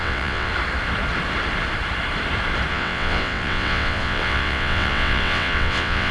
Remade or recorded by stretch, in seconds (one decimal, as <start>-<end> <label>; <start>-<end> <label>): 0.0-0.5 remade; 0.5-2.7 recorded; 2.7-6.1 remade